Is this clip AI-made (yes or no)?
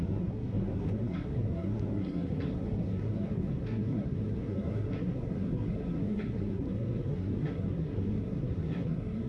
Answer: yes